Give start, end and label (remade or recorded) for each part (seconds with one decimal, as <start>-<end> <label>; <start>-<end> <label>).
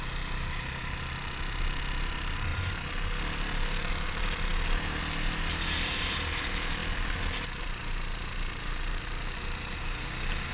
0.0-6.8 recorded; 6.8-7.6 remade; 7.6-10.5 recorded